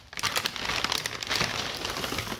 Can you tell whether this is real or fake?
real